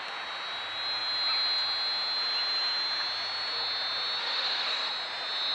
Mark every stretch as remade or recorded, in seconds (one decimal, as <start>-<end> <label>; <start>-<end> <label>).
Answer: 0.0-4.2 recorded; 4.2-4.9 remade; 4.9-5.5 recorded